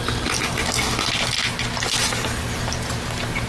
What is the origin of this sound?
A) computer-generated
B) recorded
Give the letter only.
B